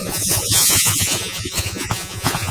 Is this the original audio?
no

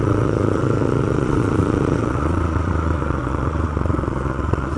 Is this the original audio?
no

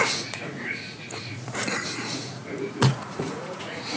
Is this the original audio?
no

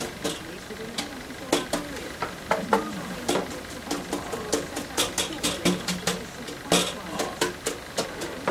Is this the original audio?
yes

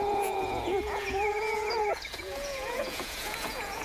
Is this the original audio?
no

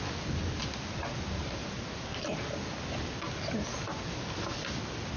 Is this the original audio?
yes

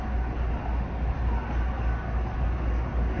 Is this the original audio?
yes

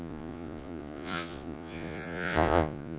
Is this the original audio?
no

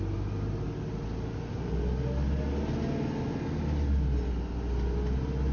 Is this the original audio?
yes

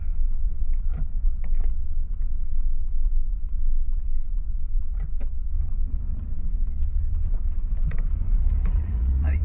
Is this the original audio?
no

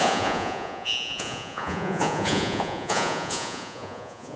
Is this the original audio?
no